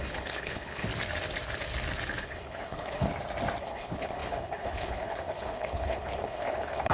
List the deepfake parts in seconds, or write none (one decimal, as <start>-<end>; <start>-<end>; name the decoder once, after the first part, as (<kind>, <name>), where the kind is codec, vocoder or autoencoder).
0.0-0.9 (codec, HILCodec); 2.2-3.1; 3.6-6.9